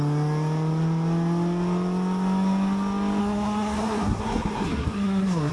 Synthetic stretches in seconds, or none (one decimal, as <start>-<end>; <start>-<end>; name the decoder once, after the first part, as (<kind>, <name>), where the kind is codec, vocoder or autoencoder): 3.2-5.5 (codec, SNAC)